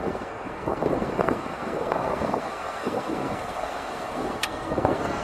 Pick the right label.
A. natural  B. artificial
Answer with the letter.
B